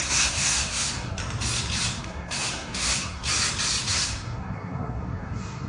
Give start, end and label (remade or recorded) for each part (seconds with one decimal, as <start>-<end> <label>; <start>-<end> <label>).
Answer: 0.0-1.2 remade; 1.2-2.0 recorded; 2.0-3.3 remade; 3.3-3.9 recorded; 3.9-5.7 remade